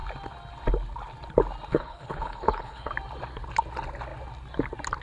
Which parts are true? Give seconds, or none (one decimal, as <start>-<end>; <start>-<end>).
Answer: 0.0-1.7; 2.9-5.0